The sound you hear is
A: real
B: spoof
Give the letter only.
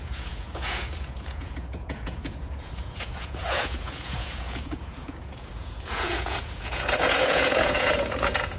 B